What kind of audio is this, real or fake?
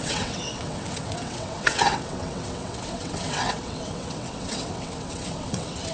fake